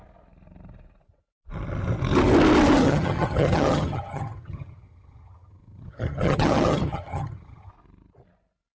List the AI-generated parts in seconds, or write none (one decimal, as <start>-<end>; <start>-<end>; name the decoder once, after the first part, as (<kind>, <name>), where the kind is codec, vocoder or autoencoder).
2.8-7.7 (vocoder, HiFi-GAN)